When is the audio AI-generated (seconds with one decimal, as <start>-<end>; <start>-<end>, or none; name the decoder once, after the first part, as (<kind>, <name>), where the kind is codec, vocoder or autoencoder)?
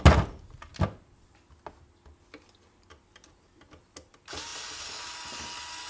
none